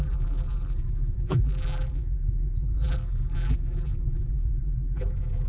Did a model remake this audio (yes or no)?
yes